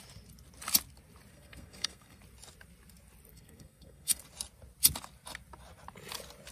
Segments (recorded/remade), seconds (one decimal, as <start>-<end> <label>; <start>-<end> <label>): 0.0-1.3 recorded; 1.3-2.2 remade; 2.2-3.3 recorded; 3.3-4.2 remade; 4.2-6.5 recorded